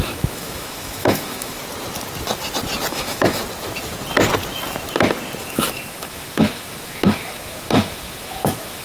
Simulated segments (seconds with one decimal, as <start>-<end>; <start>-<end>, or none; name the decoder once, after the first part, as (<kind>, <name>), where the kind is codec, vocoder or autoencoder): 0.0-1.6 (autoencoder, DAC-VAE); 2.9-3.4; 5.4-8.8

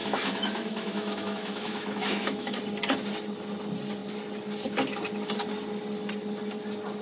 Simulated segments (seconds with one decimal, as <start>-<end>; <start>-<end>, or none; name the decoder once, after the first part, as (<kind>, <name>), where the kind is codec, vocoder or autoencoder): 0.0-2.6 (autoencoder, DAC-VAE)

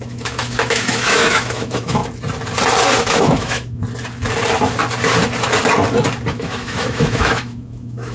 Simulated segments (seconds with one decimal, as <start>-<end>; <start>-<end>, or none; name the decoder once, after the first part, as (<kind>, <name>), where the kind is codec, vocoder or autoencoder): 0.0-2.0 (autoencoder, DAC-VAE); 3.0-3.8; 6.3-8.1